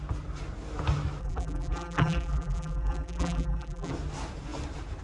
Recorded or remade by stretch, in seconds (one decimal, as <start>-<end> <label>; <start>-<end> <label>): 0.0-1.2 recorded; 1.2-3.9 remade; 3.9-5.0 recorded